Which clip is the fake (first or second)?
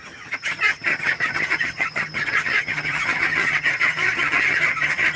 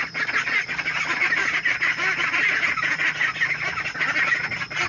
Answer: first